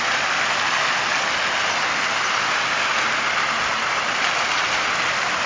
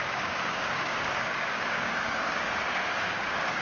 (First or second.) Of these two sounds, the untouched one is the first